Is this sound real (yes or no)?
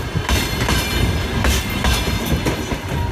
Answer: yes